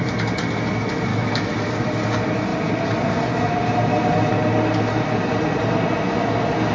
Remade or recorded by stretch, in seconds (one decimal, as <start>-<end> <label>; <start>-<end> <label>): 0.0-1.1 recorded; 1.1-1.8 remade; 1.8-6.7 recorded